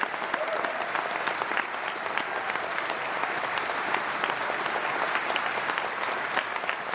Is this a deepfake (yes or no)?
no